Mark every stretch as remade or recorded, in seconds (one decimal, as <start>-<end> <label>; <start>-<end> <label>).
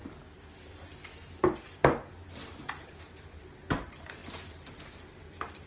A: 0.0-5.7 recorded